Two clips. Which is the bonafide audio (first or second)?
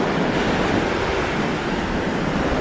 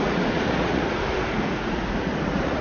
first